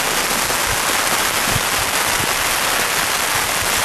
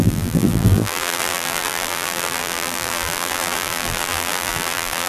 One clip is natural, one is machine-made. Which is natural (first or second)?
first